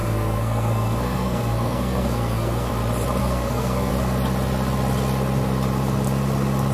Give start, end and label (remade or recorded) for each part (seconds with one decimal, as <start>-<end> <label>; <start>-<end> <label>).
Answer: 0.0-2.7 remade; 2.7-3.2 recorded; 3.2-3.9 remade; 3.9-6.7 recorded